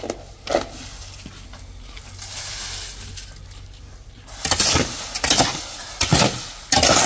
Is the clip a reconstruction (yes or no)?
no